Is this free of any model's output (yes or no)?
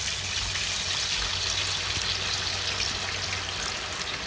yes